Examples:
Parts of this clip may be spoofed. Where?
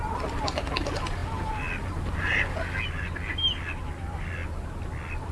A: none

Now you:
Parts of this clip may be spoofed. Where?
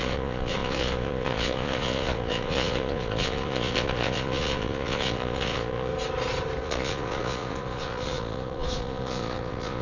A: 0.0-5.9; 6.6-9.8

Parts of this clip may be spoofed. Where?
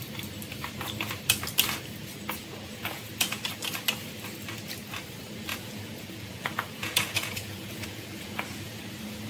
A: 2.4-3.4; 5.5-8.8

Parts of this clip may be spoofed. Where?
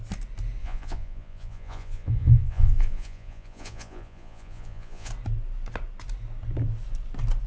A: 0.6-5.1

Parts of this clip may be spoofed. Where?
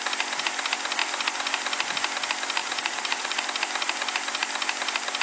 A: 2.6-3.4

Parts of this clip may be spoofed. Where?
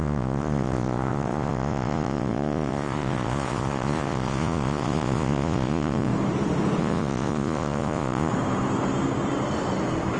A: 0.0-6.1; 6.8-8.3